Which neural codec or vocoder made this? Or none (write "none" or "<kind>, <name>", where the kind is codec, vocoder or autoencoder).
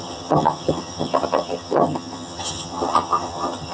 vocoder, HiFi-GAN